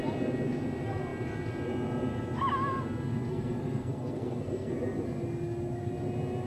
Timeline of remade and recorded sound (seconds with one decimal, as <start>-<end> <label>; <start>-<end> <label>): 0.0-3.3 recorded; 3.3-4.7 remade; 4.7-6.5 recorded